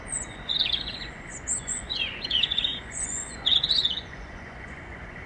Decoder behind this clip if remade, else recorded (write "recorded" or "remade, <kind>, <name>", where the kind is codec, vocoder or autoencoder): remade, vocoder, Vocos